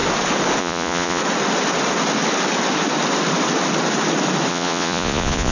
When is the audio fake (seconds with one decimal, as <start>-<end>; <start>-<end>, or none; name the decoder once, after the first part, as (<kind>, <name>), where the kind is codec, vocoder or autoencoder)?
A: 0.6-1.2 (vocoder, Vocos); 4.5-5.5